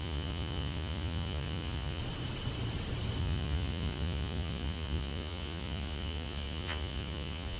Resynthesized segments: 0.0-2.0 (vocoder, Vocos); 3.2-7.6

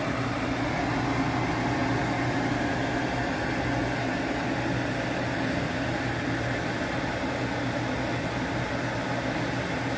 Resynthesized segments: none

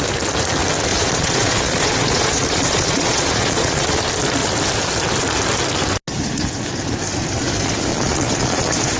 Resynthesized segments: 0.9-4.0 (vocoder, Vocos); 7.9-9.0

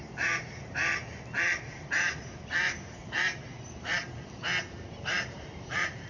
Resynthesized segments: 0.0-1.0 (vocoder, BigVGAN v2); 1.7-4.0; 4.9-6.1

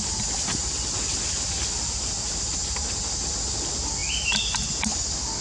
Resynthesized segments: none

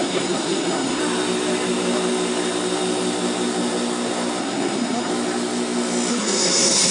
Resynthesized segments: 0.0-1.0 (codec, SNAC); 4.4-5.1; 6.1-6.9